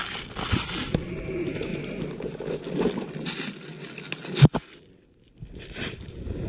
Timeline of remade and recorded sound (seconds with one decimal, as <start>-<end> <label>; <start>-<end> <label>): 0.0-6.5 recorded